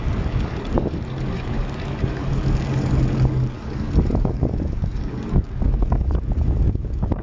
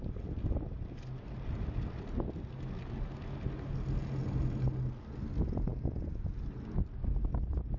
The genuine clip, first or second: second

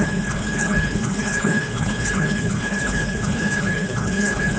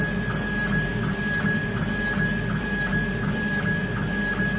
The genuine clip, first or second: second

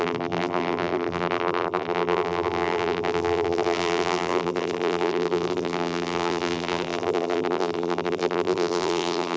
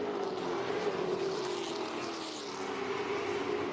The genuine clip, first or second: second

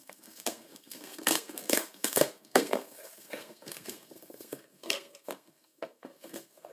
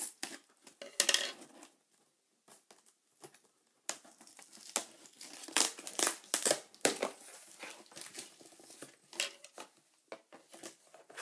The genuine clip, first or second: second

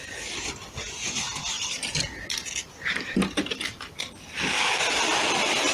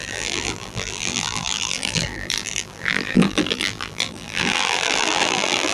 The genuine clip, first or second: first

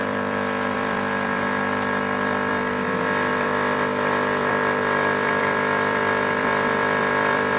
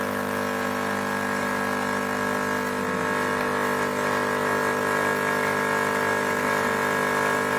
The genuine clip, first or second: second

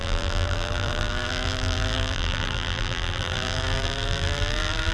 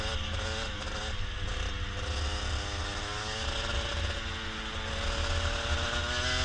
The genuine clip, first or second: second